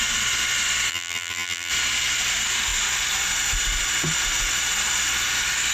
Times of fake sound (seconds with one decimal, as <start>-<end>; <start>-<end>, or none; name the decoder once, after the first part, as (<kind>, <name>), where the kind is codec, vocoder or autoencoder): 0.9-1.7 (vocoder, BigVGAN v2)